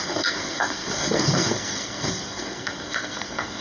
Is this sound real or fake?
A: fake